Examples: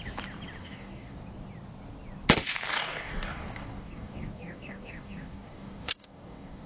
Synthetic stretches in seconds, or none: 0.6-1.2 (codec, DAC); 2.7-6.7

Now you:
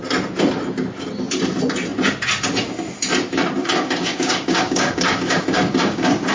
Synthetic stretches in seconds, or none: 3.6-6.3 (codec, DAC)

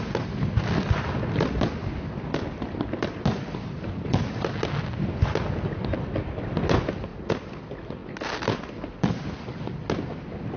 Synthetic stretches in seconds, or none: none

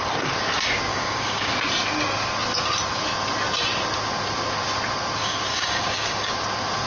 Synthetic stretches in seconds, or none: 0.9-1.5 (codec, DAC); 5.2-6.3

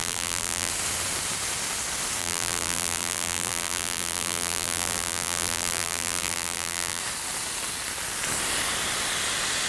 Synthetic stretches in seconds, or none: 0.0-0.7 (vocoder, BigVGAN v2); 2.2-7.0

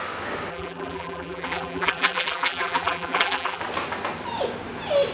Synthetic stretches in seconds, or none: 0.5-3.6 (vocoder, BigVGAN v2)